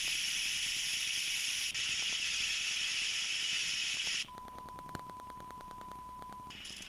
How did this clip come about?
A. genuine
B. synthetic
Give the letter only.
A